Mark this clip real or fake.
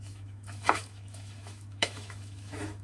fake